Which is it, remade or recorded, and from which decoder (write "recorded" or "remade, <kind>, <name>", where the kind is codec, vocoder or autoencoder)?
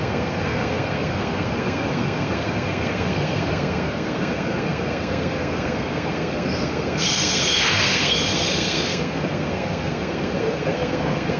remade, codec, SNAC